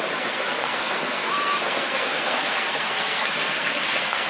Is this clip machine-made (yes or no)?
yes